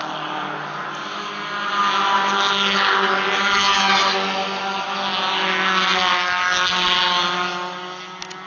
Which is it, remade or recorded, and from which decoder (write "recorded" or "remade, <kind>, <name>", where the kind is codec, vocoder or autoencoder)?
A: recorded